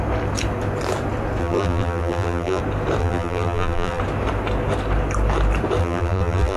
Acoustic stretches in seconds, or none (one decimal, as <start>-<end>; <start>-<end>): 0.0-1.4; 2.6-3.0; 4.0-5.8